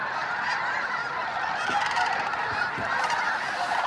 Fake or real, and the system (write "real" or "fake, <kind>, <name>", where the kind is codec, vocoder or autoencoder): real